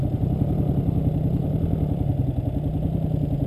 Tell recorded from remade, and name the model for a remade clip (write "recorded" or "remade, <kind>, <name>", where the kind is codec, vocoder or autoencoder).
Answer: recorded